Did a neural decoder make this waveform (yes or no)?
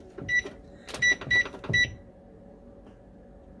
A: no